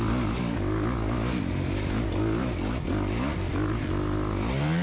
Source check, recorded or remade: recorded